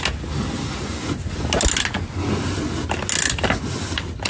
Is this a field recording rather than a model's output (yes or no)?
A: yes